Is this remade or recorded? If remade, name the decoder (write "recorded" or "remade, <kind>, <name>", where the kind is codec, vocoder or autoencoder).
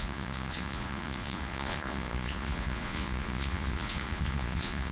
remade, vocoder, Vocos